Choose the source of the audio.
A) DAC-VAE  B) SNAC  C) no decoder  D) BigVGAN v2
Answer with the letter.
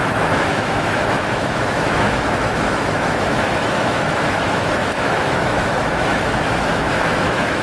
A